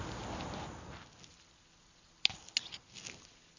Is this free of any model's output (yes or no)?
yes